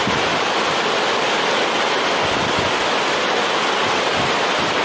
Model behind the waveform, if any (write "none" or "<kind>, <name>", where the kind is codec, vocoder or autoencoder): none